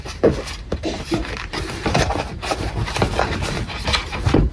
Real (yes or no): no